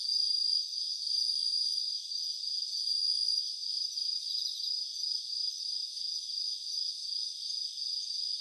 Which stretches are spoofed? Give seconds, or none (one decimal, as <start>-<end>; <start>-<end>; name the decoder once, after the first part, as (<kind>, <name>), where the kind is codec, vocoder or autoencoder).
1.0-1.8 (vocoder, BigVGAN v2); 3.2-4.2; 5.1-5.8